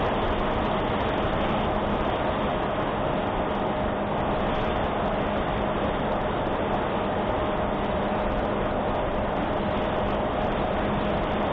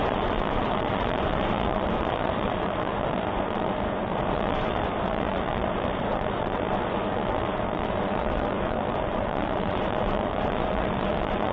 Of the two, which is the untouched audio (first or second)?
first